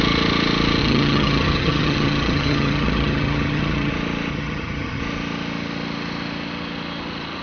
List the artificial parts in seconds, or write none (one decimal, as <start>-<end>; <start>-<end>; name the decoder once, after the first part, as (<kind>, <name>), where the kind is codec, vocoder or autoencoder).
0.8-3.9 (vocoder, HiFi-GAN); 4.3-5.0